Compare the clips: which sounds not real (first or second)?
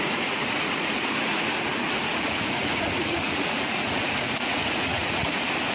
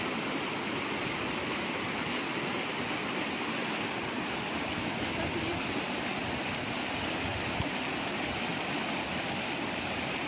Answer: first